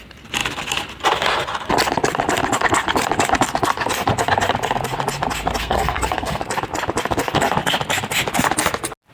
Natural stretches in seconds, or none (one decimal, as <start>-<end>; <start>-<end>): 0.0-5.6; 6.4-9.1